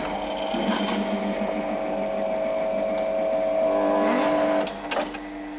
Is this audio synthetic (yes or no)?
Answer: no